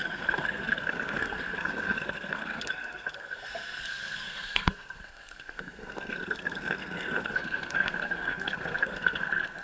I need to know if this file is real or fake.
fake